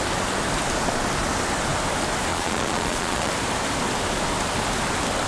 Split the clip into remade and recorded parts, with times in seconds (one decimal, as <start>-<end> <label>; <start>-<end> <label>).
0.0-2.3 recorded; 2.3-3.3 remade; 3.3-5.3 recorded